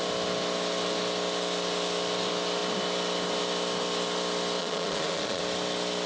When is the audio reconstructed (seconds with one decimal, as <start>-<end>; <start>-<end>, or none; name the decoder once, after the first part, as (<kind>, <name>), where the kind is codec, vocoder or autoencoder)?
4.6-5.4 (vocoder, Vocos)

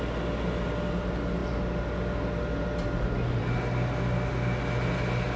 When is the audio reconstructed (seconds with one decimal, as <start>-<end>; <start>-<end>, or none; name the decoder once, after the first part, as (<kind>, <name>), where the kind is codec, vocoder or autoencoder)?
none

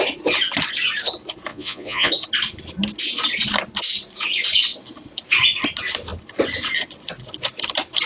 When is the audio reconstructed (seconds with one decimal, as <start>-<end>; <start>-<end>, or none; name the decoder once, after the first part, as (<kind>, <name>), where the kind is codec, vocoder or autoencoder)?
1.5-2.1 (vocoder, Vocos)

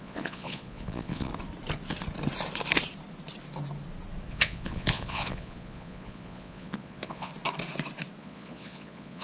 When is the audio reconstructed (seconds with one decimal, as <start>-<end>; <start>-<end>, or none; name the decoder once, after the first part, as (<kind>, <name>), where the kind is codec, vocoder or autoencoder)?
0.0-1.3 (vocoder, Vocos); 4.3-7.3; 8.2-9.2

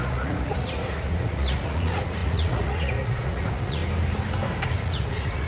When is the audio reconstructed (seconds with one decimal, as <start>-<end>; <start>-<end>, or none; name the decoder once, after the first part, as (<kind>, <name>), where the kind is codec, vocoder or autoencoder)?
0.0-3.8 (vocoder, Vocos); 4.7-5.5

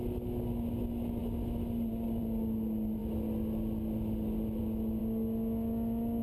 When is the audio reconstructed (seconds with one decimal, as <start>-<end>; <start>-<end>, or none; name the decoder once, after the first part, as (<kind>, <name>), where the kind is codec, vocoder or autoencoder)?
none

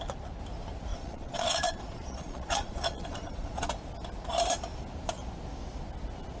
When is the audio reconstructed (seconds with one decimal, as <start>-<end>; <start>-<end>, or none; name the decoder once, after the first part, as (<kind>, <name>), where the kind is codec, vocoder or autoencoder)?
0.9-3.7 (vocoder, Vocos)

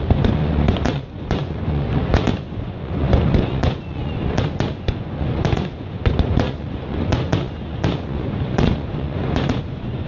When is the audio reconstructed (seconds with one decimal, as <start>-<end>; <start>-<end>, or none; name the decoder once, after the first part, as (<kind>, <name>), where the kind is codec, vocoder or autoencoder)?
0.0-10.1 (vocoder, Vocos)